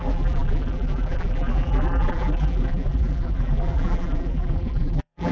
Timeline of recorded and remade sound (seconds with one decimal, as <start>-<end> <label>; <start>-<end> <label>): 0.0-5.3 remade